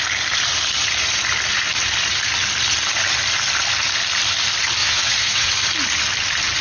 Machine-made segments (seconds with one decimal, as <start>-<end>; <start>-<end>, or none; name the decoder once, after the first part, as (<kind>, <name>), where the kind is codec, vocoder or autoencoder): 4.8-5.5 (vocoder, WaveNeXt)